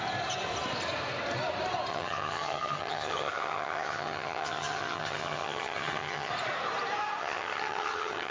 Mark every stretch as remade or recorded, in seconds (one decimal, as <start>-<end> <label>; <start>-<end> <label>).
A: 0.0-1.9 recorded; 1.9-6.3 remade; 6.3-7.2 recorded; 7.2-8.3 remade